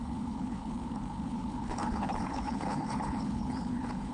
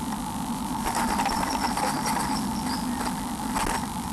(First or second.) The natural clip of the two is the second